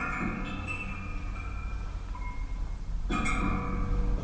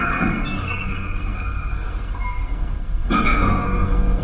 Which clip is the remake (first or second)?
second